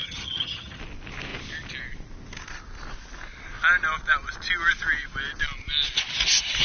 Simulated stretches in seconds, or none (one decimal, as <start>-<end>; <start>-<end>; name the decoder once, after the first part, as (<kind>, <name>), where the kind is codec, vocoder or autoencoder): 0.0-0.8 (vocoder, HiFi-GAN)